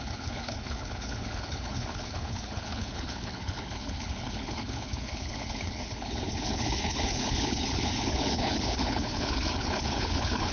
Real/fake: fake